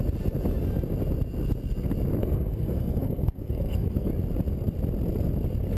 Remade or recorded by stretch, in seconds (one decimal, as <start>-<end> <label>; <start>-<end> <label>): 0.0-2.2 recorded; 2.2-4.1 remade; 4.1-5.8 recorded